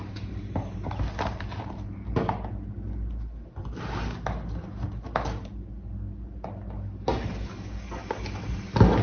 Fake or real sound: real